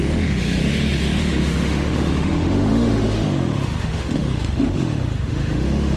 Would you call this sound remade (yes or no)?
yes